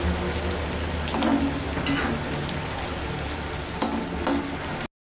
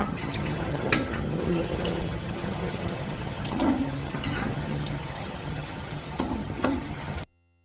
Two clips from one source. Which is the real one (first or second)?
first